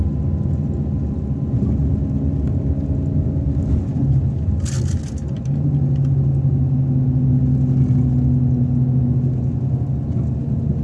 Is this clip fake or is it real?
real